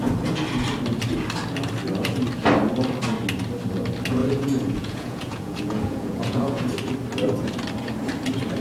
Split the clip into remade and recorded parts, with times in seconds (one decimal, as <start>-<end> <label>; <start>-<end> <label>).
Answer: 0.0-4.2 recorded; 4.2-6.6 remade; 6.6-8.6 recorded